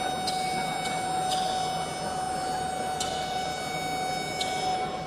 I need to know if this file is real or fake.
real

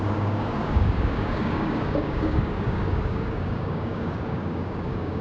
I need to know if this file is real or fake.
fake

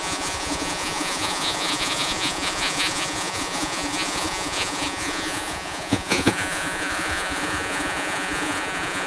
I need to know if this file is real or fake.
fake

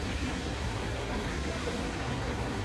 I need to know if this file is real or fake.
fake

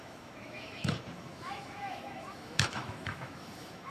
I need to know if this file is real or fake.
fake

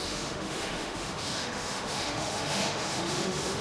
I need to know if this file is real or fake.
fake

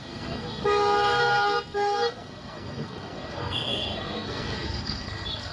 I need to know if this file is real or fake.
fake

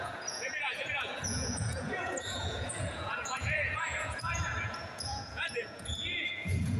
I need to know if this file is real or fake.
fake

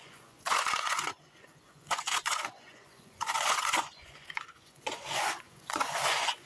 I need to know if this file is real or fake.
fake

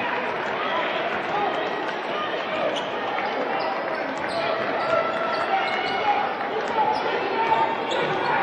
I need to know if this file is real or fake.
real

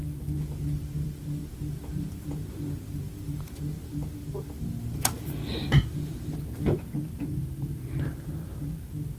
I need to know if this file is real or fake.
fake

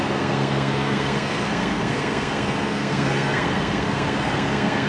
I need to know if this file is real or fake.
fake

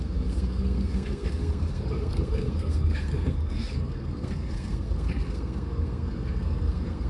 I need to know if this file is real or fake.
fake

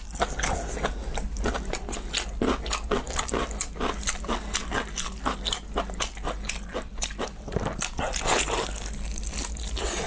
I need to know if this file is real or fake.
real